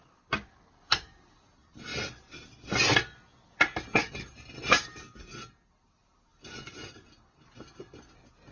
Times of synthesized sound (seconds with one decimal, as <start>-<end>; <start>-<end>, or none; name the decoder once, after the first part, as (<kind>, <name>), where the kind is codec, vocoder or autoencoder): none